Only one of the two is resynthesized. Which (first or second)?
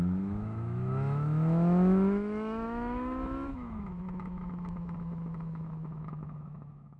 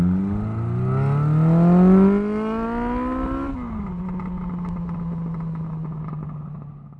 first